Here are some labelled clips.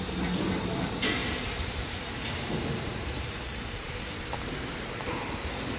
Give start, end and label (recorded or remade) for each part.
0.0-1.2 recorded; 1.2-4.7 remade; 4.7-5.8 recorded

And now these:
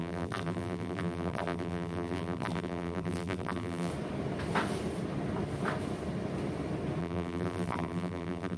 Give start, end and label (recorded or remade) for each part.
0.0-3.9 remade; 3.9-7.0 recorded; 7.0-8.6 remade

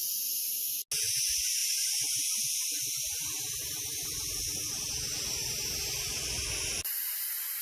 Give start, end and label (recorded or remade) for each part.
0.0-1.6 recorded; 1.6-3.8 remade; 3.8-5.4 recorded; 5.4-6.0 remade; 6.0-7.6 recorded